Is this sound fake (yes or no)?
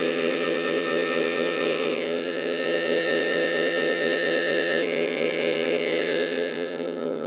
yes